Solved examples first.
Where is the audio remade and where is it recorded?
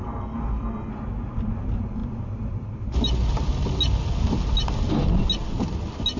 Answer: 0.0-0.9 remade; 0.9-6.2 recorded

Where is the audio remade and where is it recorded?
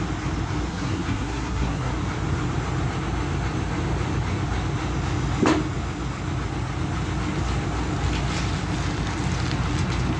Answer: 0.0-0.7 recorded; 0.7-1.9 remade; 1.9-10.2 recorded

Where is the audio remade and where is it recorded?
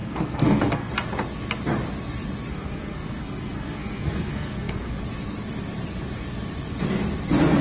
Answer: 0.0-0.9 remade; 0.9-2.5 recorded; 2.5-5.0 remade; 5.0-7.6 recorded